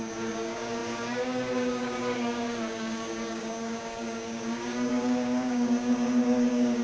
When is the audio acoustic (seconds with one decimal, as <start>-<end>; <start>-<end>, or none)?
none